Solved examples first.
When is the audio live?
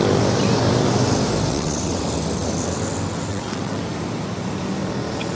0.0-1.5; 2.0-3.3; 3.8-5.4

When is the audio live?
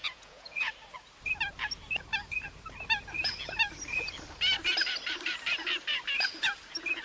0.7-7.0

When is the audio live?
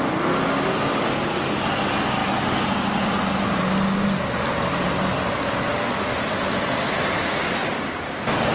0.0-8.5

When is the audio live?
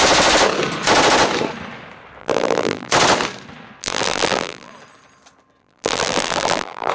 0.0-2.2; 2.9-3.8; 4.7-5.6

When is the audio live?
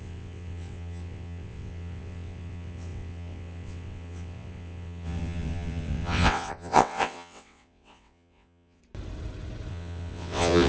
8.8-9.7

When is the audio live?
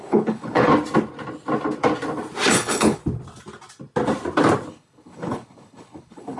0.7-2.5; 3.0-4.7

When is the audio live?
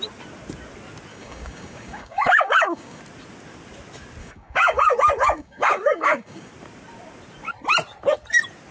0.0-1.1; 3.0-4.2; 6.5-8.7